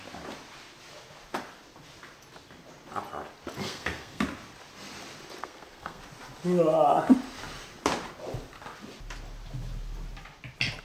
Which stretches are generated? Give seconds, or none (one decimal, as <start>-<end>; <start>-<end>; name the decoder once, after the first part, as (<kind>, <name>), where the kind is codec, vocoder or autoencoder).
3.6-4.2 (codec, SNAC); 5.4-6.0